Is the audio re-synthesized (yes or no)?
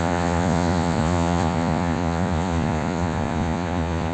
yes